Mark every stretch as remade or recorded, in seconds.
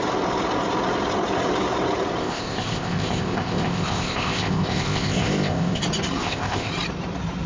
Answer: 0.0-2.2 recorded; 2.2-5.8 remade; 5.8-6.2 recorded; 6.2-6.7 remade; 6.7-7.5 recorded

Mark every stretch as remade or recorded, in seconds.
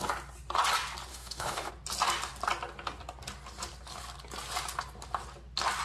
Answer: 0.0-1.1 recorded; 1.1-1.7 remade; 1.7-5.8 recorded